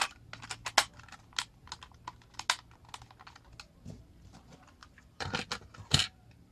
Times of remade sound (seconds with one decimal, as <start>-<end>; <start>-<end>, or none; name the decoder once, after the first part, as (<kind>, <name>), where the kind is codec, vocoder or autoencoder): 4.8-5.5 (vocoder, BigVGAN v2); 6.0-6.5